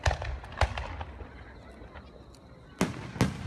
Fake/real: real